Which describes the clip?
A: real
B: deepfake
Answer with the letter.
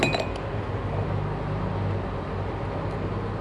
A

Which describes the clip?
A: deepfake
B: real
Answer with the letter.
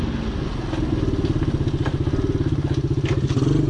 B